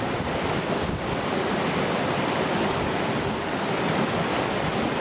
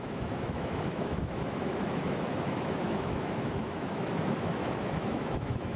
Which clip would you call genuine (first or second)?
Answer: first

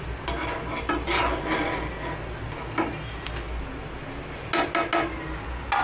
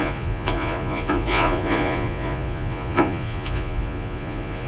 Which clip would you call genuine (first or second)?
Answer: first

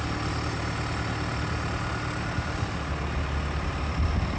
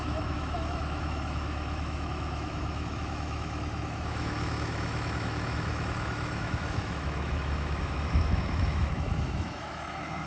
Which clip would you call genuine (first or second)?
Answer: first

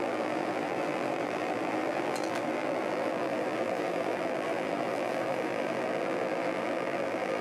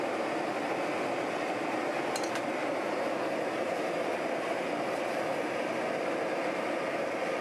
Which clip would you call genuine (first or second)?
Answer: second